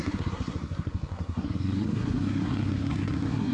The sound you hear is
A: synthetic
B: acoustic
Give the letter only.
A